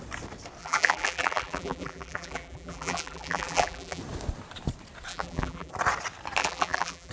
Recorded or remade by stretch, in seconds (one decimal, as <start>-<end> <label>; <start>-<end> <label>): 0.0-0.6 recorded; 0.6-4.0 remade; 4.0-5.1 recorded; 5.1-5.7 remade; 5.7-6.4 recorded; 6.4-7.1 remade